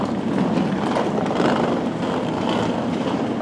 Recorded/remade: recorded